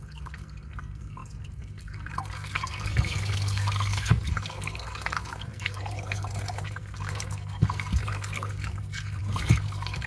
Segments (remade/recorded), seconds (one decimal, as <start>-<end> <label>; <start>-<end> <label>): 0.0-10.1 remade